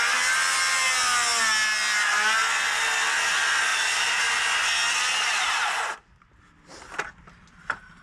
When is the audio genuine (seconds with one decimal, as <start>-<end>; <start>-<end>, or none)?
0.0-3.7; 4.2-8.0